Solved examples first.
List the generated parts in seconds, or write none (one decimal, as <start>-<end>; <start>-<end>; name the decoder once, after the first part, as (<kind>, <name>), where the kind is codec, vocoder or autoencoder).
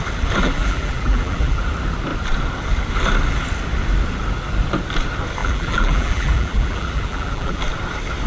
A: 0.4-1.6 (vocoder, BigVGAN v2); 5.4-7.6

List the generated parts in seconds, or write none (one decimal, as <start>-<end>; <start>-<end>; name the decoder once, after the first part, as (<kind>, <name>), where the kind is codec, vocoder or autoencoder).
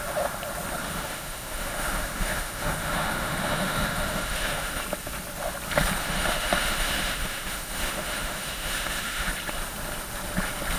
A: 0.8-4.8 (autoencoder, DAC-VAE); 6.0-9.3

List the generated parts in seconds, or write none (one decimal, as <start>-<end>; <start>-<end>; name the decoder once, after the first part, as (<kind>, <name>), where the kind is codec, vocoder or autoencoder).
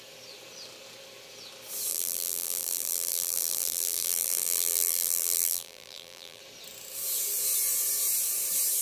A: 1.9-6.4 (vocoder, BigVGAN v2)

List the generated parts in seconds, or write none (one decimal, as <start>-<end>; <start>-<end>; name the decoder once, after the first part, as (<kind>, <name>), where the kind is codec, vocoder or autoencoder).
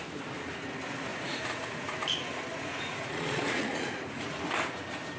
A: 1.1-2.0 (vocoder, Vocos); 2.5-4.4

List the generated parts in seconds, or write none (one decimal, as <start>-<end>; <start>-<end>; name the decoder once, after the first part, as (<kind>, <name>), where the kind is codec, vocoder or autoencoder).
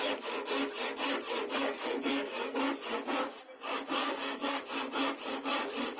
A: 1.6-2.6 (codec, SNAC); 4.0-4.6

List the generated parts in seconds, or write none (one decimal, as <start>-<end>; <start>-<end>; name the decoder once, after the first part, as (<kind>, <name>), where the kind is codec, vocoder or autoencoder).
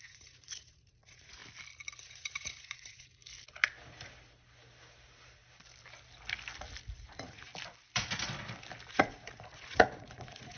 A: 0.0-1.4 (vocoder, Vocos); 2.0-3.2; 7.0-7.5; 8.9-10.6